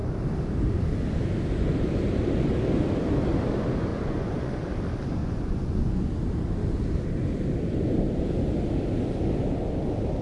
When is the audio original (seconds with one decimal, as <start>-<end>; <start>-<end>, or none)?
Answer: 0.0-3.9; 4.7-5.2; 6.1-10.2